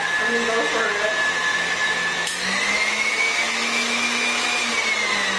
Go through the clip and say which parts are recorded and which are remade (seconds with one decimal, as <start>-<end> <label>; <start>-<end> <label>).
0.0-1.5 recorded; 1.5-4.7 remade; 4.7-5.4 recorded